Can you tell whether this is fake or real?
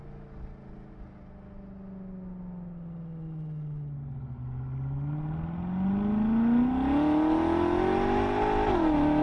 real